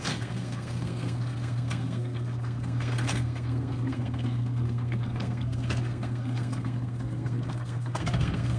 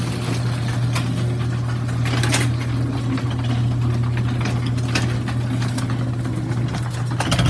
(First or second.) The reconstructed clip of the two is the first